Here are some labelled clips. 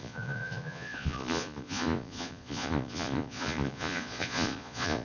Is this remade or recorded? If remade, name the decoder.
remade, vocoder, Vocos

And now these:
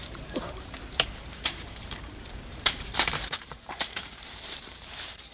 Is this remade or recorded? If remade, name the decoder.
remade, vocoder, BigVGAN v2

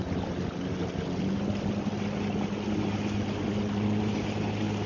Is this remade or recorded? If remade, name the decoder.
recorded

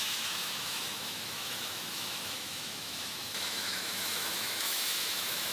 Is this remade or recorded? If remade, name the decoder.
remade, autoencoder, DAC-VAE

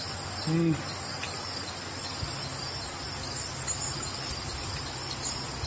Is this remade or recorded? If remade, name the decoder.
recorded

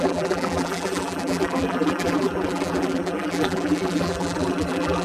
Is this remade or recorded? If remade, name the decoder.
remade, vocoder, BigVGAN v2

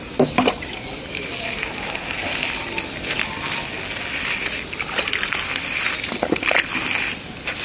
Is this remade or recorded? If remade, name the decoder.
recorded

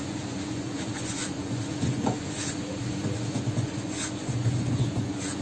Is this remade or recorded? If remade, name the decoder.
remade, vocoder, Vocos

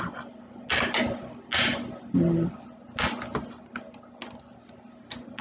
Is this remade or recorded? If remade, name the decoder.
recorded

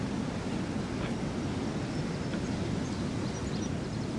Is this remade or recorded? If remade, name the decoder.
recorded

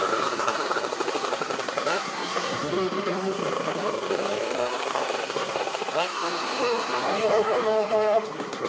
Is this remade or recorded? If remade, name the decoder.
remade, codec, SNAC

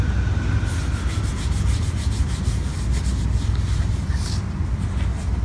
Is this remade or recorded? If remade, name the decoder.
recorded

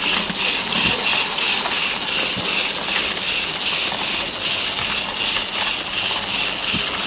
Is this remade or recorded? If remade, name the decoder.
recorded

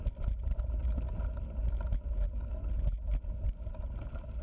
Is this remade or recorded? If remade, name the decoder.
recorded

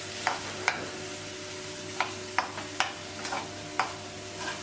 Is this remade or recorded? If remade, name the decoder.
recorded